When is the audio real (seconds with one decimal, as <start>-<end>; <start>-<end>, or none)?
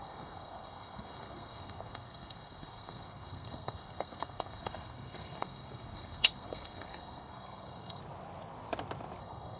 8.0-9.2